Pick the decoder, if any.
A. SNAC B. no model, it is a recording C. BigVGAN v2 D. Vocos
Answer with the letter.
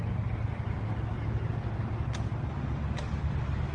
B